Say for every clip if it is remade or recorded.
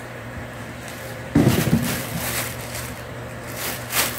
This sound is remade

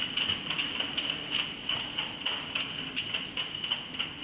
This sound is recorded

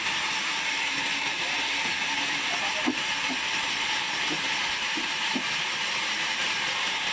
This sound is remade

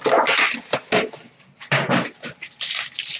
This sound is recorded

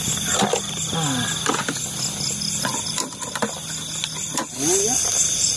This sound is recorded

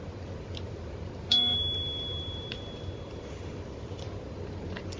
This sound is remade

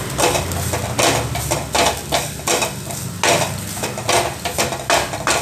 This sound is recorded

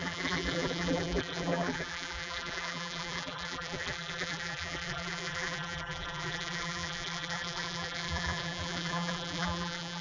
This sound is remade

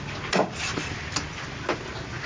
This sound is recorded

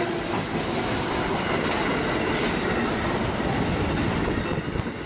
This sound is recorded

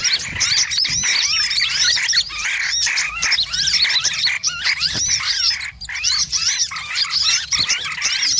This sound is remade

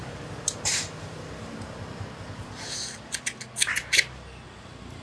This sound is recorded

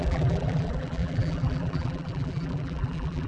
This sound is remade